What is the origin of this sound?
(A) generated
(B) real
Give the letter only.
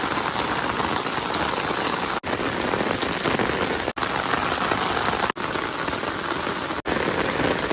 B